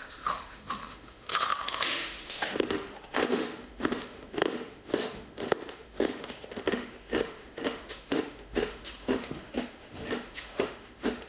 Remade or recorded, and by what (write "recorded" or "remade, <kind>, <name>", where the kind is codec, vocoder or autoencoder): remade, autoencoder, DAC-VAE